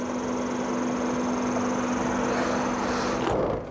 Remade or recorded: recorded